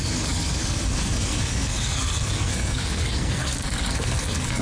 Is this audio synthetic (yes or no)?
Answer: yes